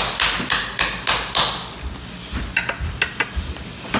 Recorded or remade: recorded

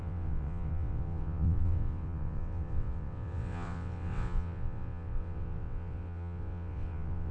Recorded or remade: remade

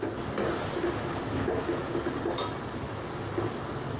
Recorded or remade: recorded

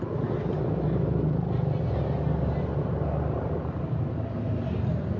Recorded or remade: recorded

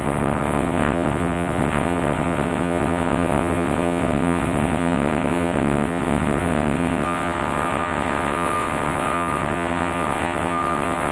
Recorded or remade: remade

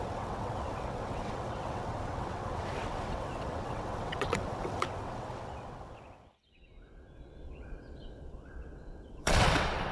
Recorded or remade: remade